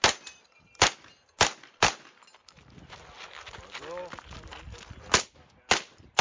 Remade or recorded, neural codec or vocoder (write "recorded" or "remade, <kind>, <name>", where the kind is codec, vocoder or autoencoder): recorded